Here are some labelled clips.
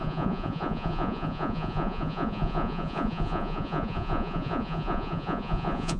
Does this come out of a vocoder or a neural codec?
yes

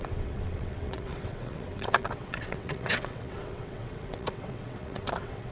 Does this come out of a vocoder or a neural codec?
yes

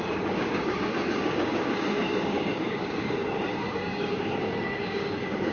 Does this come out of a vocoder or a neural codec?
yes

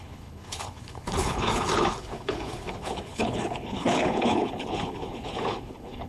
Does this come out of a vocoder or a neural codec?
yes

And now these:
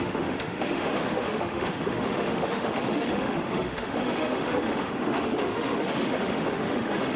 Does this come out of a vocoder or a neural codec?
yes